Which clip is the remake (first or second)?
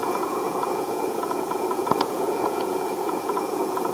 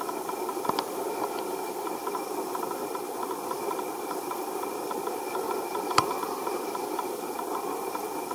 first